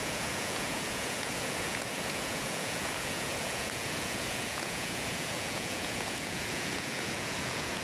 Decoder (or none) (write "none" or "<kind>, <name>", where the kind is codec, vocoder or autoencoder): vocoder, Vocos